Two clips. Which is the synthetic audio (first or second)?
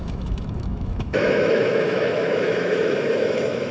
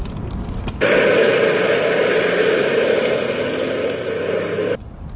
first